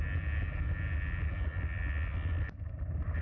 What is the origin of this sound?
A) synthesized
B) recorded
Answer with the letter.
B